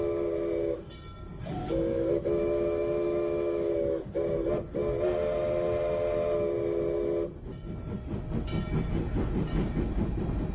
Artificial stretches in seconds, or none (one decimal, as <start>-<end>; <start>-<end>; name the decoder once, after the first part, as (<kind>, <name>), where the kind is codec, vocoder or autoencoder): 1.6-3.7 (autoencoder, DAC-VAE)